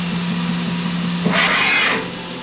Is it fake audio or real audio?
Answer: real